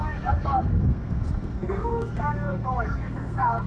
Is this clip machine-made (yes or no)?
yes